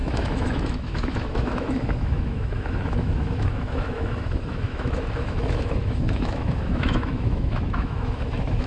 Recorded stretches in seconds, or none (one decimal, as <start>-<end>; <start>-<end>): none